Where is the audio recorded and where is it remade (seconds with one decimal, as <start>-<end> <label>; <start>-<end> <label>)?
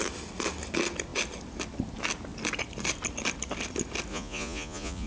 0.0-4.1 recorded; 4.1-5.1 remade